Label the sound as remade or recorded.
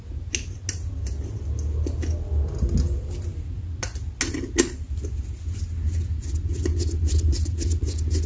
recorded